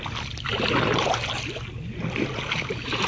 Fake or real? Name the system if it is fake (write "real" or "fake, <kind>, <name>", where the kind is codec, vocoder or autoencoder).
real